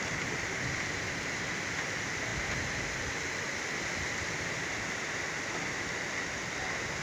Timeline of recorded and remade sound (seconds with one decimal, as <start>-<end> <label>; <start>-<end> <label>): 0.0-7.0 recorded